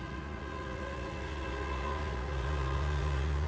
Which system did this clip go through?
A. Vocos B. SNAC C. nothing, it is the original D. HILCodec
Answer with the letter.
A